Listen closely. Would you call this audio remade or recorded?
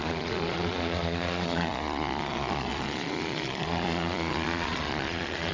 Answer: remade